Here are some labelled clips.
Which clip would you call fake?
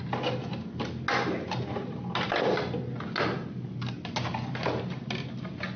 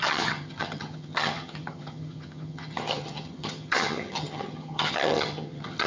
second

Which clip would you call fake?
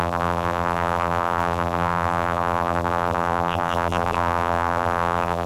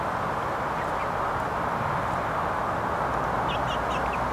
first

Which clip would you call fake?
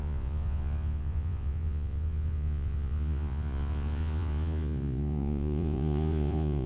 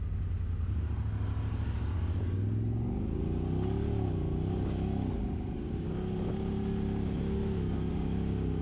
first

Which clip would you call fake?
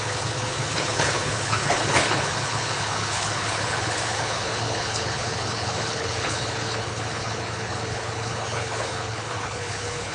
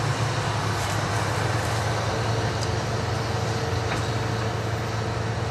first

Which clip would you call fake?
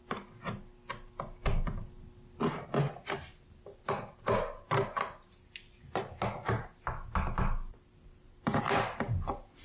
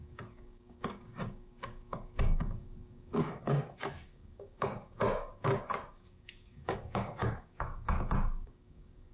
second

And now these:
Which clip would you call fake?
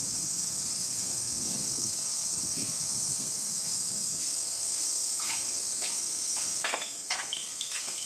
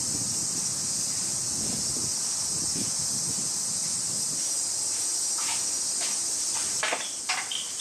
first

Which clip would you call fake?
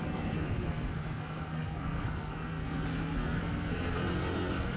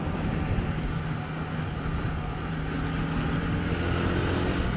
first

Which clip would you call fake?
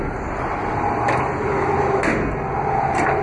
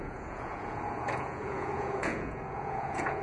second